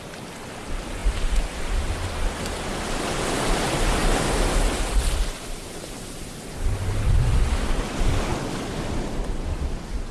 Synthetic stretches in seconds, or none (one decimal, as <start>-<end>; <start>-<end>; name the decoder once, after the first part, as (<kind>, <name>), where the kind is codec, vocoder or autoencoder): none

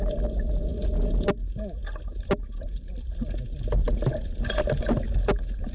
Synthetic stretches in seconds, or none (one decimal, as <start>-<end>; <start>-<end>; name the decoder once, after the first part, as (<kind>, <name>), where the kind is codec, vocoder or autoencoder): none

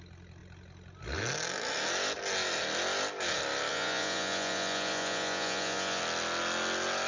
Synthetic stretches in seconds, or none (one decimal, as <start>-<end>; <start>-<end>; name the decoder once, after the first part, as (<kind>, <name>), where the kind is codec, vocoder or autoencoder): 3.7-6.0 (vocoder, Vocos)

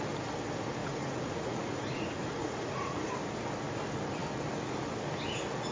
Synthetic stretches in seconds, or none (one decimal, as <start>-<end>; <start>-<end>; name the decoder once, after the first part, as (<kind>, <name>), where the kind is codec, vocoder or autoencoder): 0.8-3.1 (vocoder, Vocos)

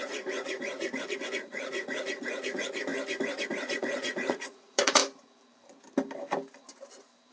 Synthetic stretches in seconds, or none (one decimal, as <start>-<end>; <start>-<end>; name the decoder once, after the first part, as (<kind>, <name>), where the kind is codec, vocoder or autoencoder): 0.0-2.9 (vocoder, Vocos); 3.5-5.0

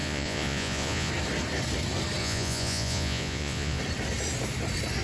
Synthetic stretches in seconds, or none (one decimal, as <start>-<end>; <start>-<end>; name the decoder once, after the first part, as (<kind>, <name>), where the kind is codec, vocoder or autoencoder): 0.0-1.1 (vocoder, Vocos); 2.2-3.8

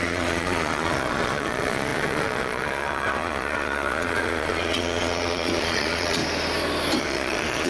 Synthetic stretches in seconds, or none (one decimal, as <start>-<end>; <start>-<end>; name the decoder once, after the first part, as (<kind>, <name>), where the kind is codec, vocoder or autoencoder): 0.0-6.2 (vocoder, Vocos); 7.0-7.7